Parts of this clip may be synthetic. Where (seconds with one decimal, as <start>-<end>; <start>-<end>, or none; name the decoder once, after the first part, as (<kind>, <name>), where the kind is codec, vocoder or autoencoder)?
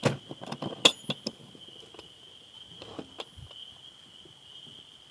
none